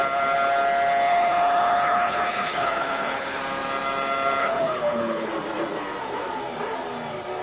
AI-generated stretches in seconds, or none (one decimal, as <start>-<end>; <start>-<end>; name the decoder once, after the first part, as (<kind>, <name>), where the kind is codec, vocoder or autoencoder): 1.1-3.4 (codec, HILCodec); 4.4-5.3